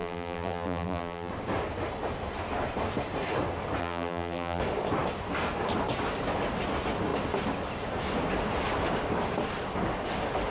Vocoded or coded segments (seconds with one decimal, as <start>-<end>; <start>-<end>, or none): 0.0-1.3; 3.8-4.6